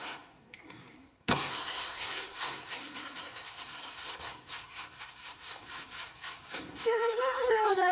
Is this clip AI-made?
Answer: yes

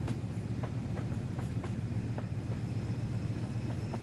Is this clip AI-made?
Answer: yes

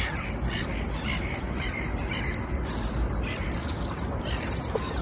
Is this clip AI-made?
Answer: no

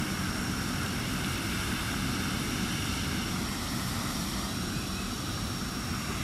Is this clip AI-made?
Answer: no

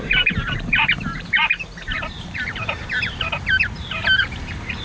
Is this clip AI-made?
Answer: yes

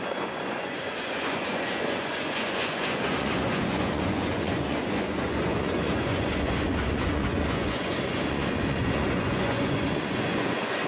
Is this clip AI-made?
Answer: yes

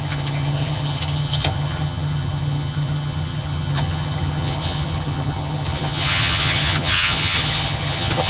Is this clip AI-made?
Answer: yes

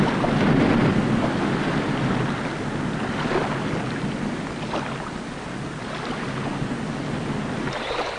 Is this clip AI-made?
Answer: no